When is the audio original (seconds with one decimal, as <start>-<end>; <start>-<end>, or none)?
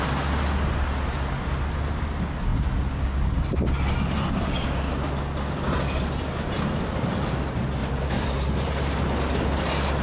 0.0-7.8; 8.5-10.0